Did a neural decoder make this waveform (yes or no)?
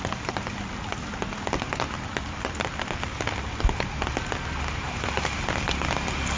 no